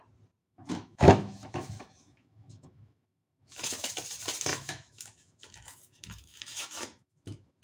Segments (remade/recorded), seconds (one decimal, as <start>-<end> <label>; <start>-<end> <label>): 0.0-0.4 recorded; 0.4-3.9 remade; 3.9-4.5 recorded; 4.5-7.6 remade